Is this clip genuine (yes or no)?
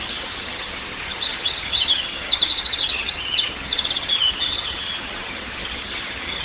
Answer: no